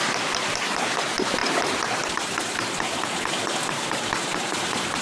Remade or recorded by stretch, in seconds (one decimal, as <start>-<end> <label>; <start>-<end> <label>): 0.0-5.0 recorded